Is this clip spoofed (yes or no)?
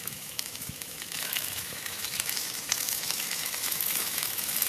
yes